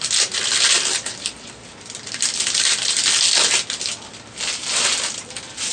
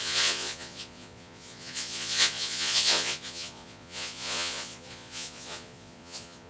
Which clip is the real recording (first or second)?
first